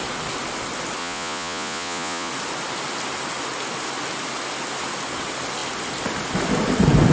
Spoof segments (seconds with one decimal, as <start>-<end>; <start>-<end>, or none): 1.0-2.3